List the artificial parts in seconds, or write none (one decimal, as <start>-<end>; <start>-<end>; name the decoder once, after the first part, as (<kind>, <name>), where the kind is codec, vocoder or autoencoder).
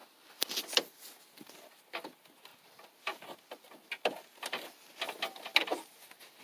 none